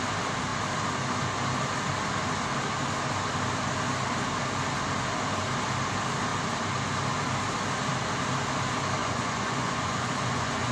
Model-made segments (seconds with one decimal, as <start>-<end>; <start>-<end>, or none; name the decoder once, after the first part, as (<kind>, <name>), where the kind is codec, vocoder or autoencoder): 9.0-10.7 (vocoder, Vocos)